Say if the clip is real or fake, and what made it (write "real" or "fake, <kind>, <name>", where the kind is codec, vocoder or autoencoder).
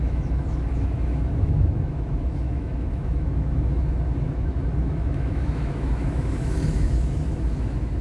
fake, autoencoder, DAC-VAE